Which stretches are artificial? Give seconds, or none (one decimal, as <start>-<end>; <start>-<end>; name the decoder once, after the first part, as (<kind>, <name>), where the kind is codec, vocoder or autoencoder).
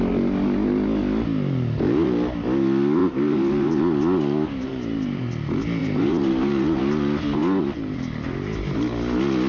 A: 3.0-3.7 (vocoder, BigVGAN v2); 4.7-5.3; 5.8-6.8